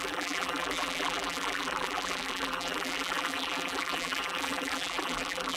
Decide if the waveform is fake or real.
fake